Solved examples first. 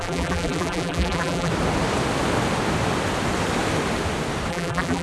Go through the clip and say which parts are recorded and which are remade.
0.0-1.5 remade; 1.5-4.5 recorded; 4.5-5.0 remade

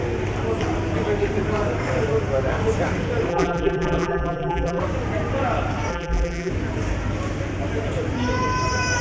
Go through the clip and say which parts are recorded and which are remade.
0.0-3.3 recorded; 3.3-4.8 remade; 4.8-5.9 recorded; 5.9-6.5 remade; 6.5-9.0 recorded